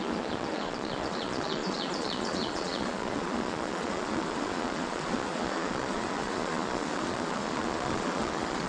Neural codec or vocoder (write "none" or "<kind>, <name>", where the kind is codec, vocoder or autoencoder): vocoder, Vocos